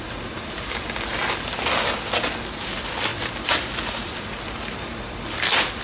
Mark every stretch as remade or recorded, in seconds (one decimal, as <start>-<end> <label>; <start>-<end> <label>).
0.0-5.8 recorded